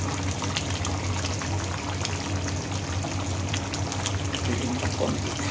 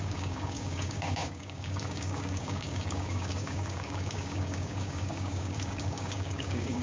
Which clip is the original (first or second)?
first